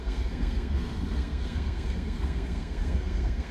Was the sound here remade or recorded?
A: remade